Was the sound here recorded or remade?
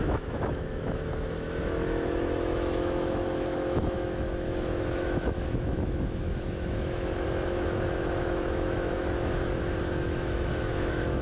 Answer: remade